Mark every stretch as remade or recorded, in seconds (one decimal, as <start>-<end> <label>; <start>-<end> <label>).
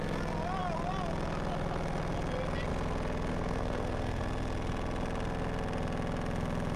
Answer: 0.0-3.3 recorded; 3.3-4.2 remade; 4.2-6.8 recorded